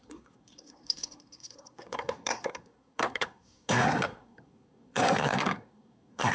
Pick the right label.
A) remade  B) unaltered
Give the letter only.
A